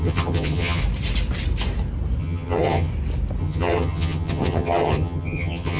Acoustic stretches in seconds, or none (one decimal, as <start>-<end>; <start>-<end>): 0.8-2.2; 2.9-3.4